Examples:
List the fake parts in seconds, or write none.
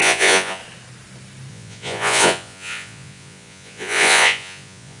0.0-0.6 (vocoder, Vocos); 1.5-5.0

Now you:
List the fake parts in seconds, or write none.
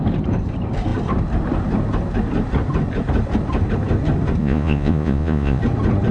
4.4-5.6 (vocoder, Vocos)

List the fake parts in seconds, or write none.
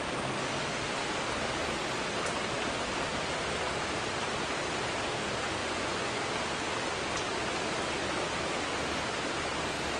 5.6-6.2 (vocoder, Vocos)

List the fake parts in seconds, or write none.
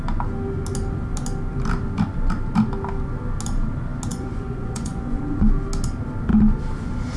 4.1-5.2 (vocoder, Vocos)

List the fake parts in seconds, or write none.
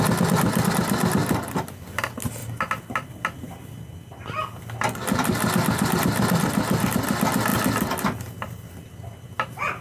none